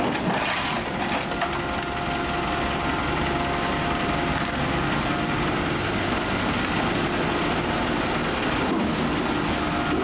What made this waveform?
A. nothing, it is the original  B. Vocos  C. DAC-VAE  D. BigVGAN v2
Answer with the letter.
A